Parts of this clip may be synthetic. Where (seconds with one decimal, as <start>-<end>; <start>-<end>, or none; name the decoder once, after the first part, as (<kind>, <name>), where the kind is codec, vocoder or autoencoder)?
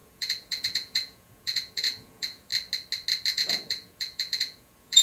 0.0-2.5 (vocoder, Vocos); 3.3-5.0